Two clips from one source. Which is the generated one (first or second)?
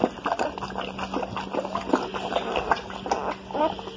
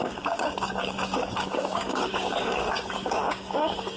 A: second